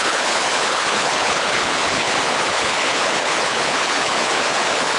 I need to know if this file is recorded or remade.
remade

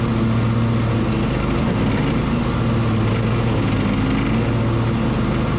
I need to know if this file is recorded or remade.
recorded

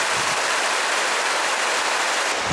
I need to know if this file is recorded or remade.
recorded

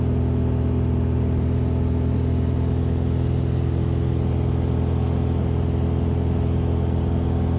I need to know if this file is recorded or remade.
recorded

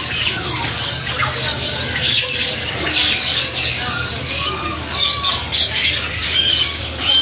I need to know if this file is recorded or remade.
remade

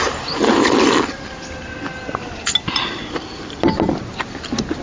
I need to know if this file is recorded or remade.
recorded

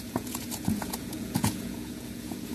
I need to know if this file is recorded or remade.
remade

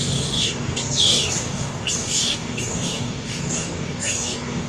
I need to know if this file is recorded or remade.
remade